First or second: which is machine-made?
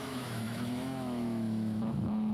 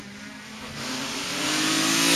first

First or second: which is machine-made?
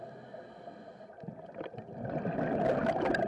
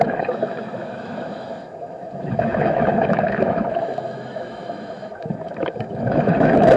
second